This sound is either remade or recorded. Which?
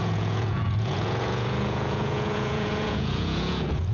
remade